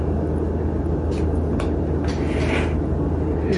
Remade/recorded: recorded